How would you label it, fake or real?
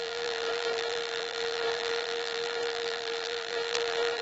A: fake